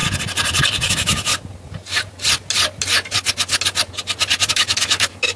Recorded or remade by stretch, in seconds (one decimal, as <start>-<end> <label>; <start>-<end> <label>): 0.0-0.9 recorded; 0.9-1.3 remade; 1.3-4.5 recorded; 4.5-5.4 remade